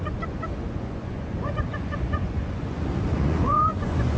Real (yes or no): no